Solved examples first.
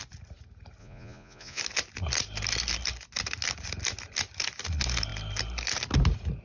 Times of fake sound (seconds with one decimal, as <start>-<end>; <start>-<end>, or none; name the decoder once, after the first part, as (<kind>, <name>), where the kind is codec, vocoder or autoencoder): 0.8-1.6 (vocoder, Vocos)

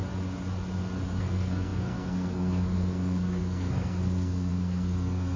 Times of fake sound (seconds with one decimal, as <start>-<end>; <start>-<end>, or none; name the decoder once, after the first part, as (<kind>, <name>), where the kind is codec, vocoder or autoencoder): 1.2-5.4 (codec, SNAC)

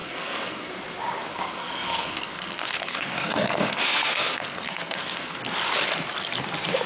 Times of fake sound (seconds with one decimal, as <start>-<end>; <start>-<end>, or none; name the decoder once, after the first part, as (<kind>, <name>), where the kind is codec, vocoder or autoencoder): 0.0-0.7 (codec, SNAC); 1.3-5.4

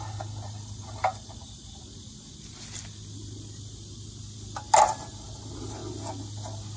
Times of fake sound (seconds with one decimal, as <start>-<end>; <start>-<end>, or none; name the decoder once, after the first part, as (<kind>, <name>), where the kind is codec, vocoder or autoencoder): none

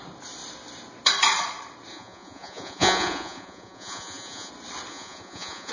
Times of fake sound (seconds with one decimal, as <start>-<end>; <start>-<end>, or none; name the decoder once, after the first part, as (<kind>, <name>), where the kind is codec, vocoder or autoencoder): 1.9-4.5 (vocoder, Vocos); 4.9-5.7